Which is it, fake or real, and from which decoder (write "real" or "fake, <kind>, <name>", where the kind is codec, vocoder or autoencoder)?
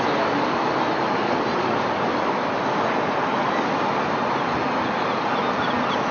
real